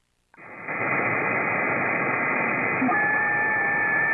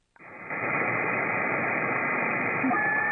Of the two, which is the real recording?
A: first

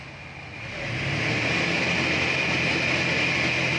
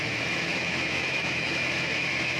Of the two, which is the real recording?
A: first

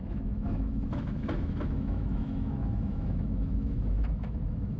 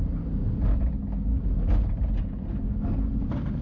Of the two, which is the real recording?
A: second